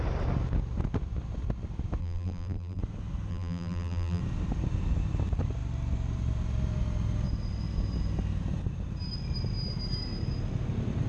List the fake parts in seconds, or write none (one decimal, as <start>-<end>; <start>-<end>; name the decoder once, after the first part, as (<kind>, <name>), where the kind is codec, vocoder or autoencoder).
2.0-2.8 (vocoder, BigVGAN v2); 3.3-4.2